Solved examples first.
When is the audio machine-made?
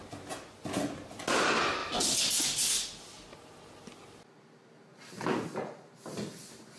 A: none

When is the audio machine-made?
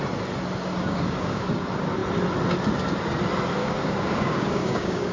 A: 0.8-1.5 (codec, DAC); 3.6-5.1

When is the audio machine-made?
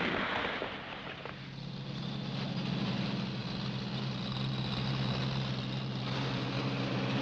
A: none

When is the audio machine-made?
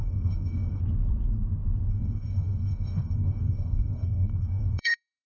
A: 0.0-0.8 (codec, DAC); 1.9-5.3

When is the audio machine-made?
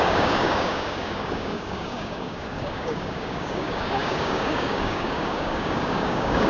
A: 0.0-6.5 (codec, DAC)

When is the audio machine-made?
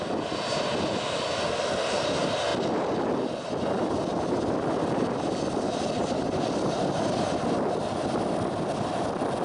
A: none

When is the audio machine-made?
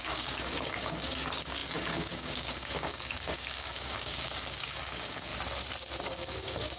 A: 0.0-5.3 (codec, DAC); 6.0-6.8